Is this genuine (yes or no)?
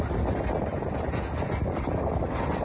yes